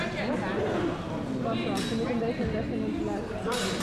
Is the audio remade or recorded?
recorded